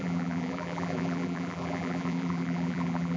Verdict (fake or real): fake